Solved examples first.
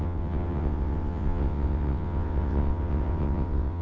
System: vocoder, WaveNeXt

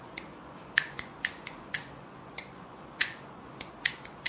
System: vocoder, Vocos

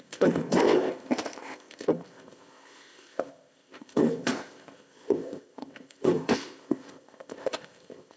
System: codec, ZipCodec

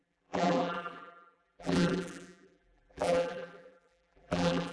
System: vocoder, BigVGAN v2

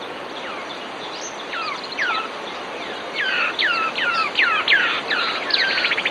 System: vocoder, BigVGAN v2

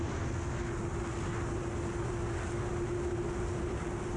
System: none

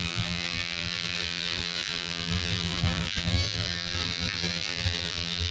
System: vocoder, BigVGAN v2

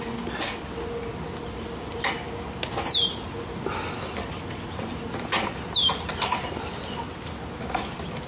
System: none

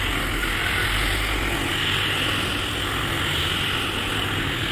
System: none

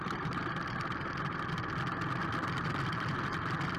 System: none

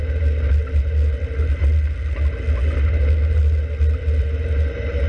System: none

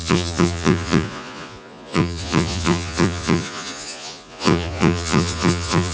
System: vocoder, Vocos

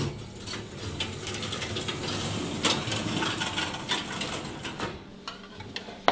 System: none